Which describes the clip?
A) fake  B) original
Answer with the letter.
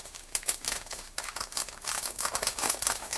A